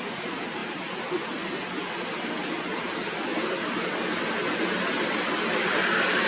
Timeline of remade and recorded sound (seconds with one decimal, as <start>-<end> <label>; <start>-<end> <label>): 0.0-6.3 recorded